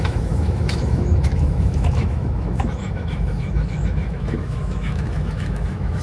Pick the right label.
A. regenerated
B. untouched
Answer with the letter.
A